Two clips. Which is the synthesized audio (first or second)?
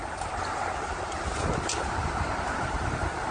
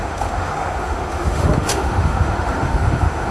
second